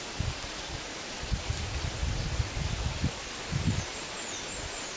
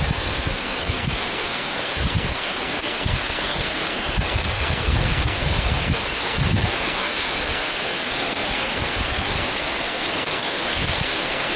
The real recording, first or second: first